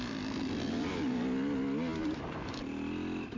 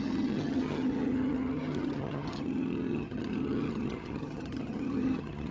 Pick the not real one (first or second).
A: second